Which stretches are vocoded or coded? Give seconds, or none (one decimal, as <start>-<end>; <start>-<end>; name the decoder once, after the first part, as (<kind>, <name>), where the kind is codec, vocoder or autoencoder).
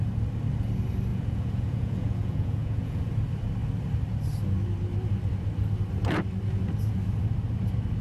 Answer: 1.1-3.0 (vocoder, Vocos)